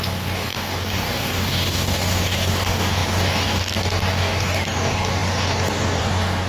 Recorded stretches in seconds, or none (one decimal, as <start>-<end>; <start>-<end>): none